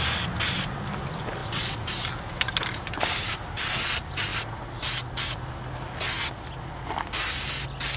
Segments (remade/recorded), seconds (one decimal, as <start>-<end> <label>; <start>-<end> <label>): 0.0-8.0 recorded